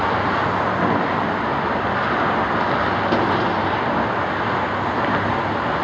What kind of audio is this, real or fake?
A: real